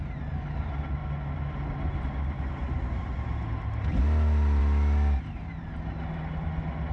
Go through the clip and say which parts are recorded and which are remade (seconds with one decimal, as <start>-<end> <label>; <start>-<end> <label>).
0.0-6.9 recorded